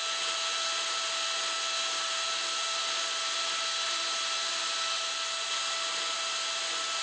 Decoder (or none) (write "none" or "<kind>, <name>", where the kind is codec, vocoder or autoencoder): none